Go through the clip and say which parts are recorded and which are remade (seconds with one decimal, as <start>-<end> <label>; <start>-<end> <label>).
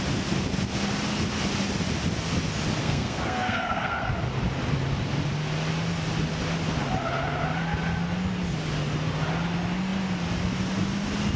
0.0-2.8 recorded; 2.8-4.1 remade; 4.1-11.4 recorded